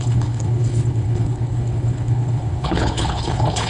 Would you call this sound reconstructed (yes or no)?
yes